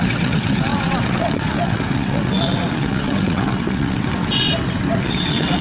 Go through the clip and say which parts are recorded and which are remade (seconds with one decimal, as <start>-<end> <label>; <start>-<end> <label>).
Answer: 0.0-4.5 remade; 4.5-5.0 recorded; 5.0-5.6 remade